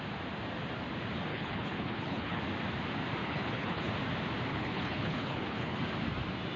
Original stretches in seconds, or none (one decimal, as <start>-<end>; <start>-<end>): 0.0-1.3; 2.4-3.2; 3.9-4.5; 5.8-6.6